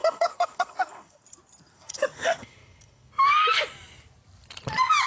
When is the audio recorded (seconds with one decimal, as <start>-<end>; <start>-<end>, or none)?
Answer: 1.2-1.7; 3.1-5.1